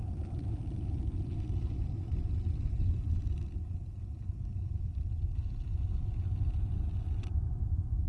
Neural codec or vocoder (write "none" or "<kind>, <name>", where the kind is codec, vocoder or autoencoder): none